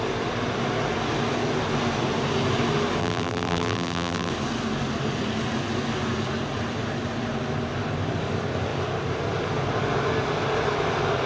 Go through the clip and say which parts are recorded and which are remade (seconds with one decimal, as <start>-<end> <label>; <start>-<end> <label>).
0.0-3.0 recorded; 3.0-4.3 remade; 4.3-11.3 recorded